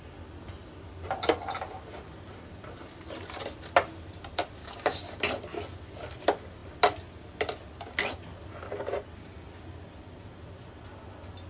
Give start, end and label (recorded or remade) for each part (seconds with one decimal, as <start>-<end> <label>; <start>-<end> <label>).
0.0-4.6 recorded; 4.6-5.2 remade; 5.2-11.5 recorded